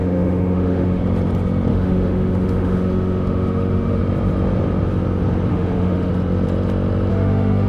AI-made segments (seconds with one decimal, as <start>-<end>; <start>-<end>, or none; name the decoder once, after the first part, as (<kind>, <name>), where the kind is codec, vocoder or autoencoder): 0.0-1.0 (autoencoder, DAC-VAE); 1.7-4.0; 5.5-6.1; 7.1-7.7